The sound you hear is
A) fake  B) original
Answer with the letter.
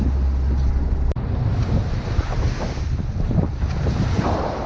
B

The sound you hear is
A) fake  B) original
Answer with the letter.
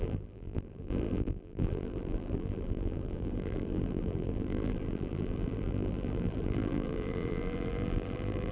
A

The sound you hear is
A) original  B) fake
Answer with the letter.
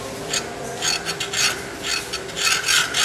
A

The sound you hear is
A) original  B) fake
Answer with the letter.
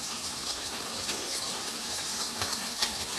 B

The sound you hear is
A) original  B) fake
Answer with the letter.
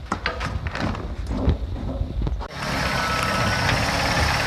A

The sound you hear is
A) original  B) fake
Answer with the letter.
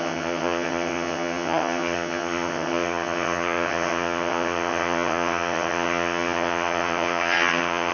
B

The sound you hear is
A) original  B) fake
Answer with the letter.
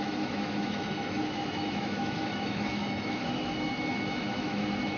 B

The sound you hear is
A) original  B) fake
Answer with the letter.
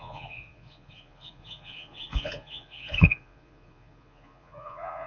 B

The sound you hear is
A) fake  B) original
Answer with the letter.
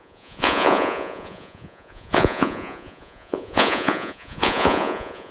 A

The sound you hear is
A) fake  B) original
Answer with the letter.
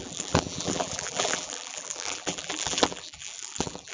A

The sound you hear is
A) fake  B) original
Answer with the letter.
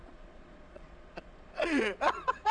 A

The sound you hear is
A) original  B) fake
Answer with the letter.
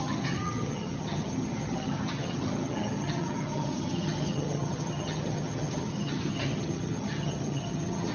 B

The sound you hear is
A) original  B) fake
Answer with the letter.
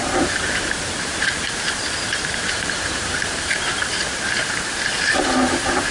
B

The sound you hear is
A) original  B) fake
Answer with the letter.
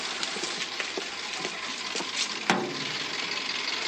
A